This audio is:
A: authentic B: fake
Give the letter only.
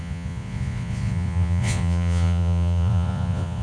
B